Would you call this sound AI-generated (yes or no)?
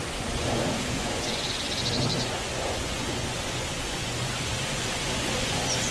yes